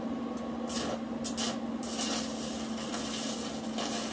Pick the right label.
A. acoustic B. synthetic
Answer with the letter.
A